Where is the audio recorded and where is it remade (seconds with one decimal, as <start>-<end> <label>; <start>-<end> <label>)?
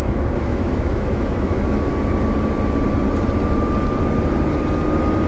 0.0-1.9 remade; 1.9-5.3 recorded